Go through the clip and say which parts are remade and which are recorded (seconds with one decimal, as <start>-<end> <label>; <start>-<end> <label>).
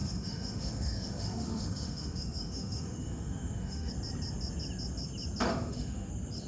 0.0-3.9 remade; 3.9-5.5 recorded; 5.5-6.1 remade; 6.1-6.5 recorded